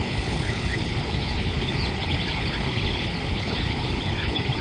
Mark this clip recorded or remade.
remade